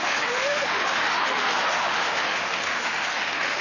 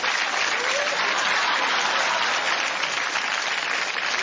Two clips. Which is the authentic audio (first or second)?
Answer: second